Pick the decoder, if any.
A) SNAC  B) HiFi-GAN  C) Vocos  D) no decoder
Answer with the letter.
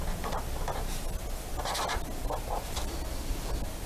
D